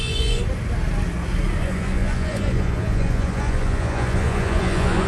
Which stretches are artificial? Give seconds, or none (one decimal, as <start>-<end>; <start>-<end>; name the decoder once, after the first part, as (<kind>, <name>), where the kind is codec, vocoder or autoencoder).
0.0-0.4 (vocoder, Vocos); 1.6-5.1